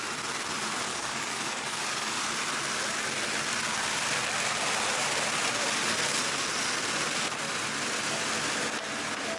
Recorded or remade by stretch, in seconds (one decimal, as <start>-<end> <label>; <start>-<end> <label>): 0.0-0.9 recorded; 0.9-2.3 remade; 2.3-9.4 recorded